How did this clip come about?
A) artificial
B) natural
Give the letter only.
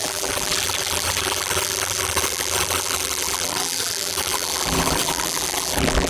A